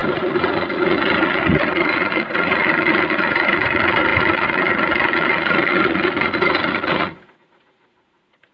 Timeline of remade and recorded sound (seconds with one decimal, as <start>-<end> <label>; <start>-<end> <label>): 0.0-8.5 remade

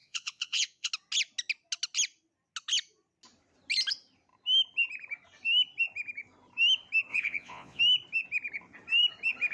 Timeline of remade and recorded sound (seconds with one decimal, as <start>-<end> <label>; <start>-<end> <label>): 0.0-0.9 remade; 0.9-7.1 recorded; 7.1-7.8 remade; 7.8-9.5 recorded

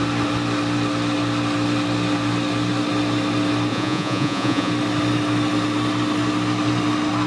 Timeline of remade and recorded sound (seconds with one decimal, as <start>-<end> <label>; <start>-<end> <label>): 0.0-3.7 recorded; 3.7-4.7 remade; 4.7-7.3 recorded